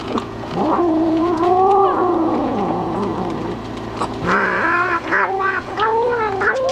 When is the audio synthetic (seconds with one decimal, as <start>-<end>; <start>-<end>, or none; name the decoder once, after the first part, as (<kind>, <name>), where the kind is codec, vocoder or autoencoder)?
0.0-3.1 (vocoder, Vocos); 5.0-5.9